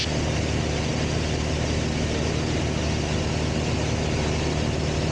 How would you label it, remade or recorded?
recorded